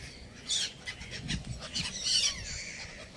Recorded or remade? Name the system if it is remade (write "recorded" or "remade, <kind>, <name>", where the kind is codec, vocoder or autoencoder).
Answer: remade, vocoder, Vocos